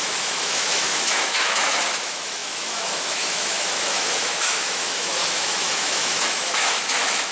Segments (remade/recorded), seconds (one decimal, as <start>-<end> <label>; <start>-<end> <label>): 0.0-7.3 remade